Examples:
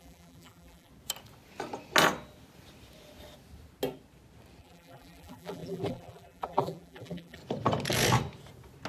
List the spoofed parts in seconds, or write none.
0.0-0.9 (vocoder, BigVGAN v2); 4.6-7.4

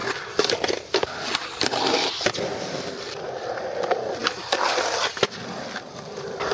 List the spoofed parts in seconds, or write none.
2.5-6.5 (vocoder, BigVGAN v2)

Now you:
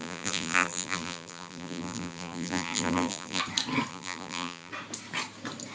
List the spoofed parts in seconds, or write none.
0.0-3.4 (vocoder, BigVGAN v2); 3.9-4.7

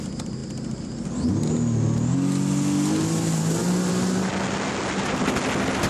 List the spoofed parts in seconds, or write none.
none

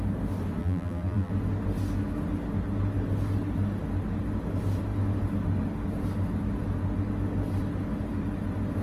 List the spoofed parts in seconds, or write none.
0.6-1.3 (vocoder, BigVGAN v2)